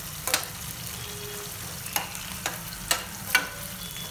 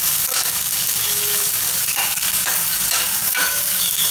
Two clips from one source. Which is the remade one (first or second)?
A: second